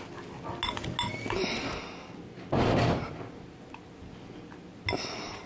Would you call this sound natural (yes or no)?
yes